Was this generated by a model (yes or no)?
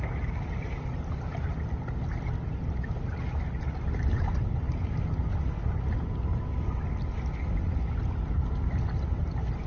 no